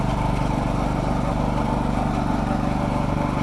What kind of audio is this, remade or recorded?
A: remade